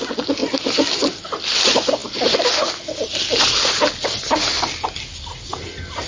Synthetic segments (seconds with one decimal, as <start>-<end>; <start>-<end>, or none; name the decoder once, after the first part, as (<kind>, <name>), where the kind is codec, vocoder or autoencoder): none